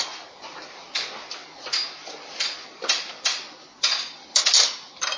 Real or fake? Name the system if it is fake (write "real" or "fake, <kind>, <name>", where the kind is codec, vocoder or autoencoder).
real